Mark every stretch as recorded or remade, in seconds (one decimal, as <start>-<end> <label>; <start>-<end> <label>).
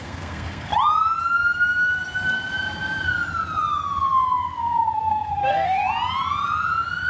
0.0-0.7 remade; 0.7-4.6 recorded; 4.6-5.8 remade; 5.8-7.1 recorded